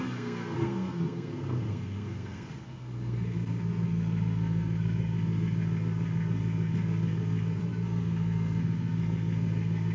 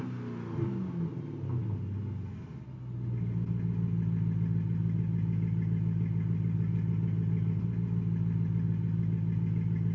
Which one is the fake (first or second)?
first